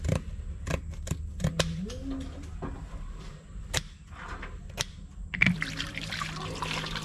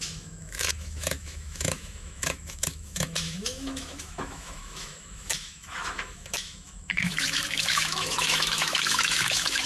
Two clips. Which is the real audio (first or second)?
first